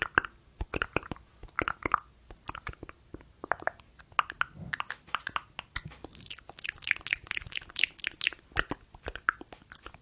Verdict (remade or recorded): recorded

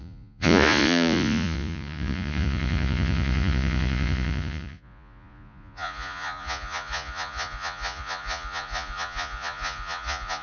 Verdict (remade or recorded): remade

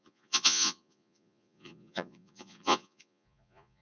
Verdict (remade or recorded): remade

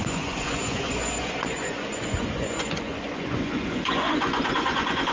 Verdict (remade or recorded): remade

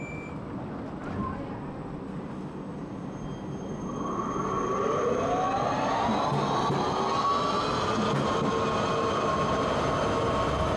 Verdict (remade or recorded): recorded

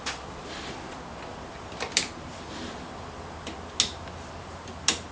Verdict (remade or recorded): recorded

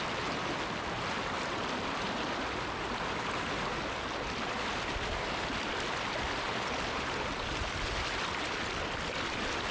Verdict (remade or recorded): recorded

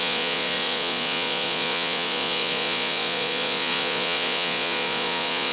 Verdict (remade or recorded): remade